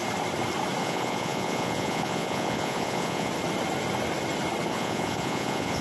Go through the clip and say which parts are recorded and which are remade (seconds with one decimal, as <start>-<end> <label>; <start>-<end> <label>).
0.0-0.8 recorded; 0.8-3.3 remade; 3.3-4.7 recorded; 4.7-5.8 remade